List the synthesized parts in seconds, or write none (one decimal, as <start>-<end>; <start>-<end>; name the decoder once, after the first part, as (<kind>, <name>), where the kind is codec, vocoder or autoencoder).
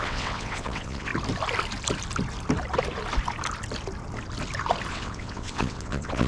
0.0-1.1 (vocoder, WaveNeXt); 4.9-6.3